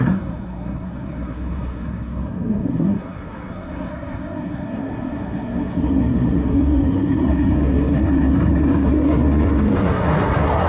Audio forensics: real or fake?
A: fake